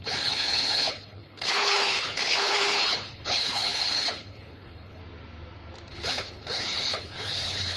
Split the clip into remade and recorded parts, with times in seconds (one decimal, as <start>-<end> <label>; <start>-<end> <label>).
0.0-5.0 remade; 5.0-5.9 recorded; 5.9-7.8 remade